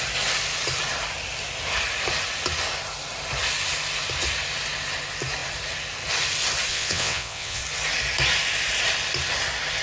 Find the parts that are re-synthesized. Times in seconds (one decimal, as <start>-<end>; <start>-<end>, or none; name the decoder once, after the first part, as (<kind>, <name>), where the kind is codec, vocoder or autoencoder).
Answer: 6.7-7.6 (vocoder, WaveNeXt)